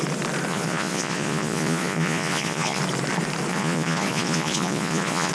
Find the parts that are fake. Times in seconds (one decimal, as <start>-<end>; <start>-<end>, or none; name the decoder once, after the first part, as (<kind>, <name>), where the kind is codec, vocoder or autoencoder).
0.5-2.8 (vocoder, Vocos); 3.5-5.3